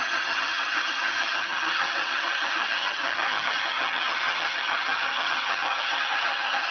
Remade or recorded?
remade